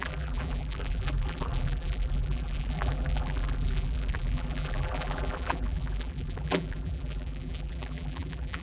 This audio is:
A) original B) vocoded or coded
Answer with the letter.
B